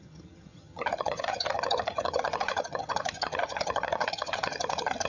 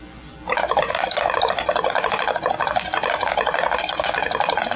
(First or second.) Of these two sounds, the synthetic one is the first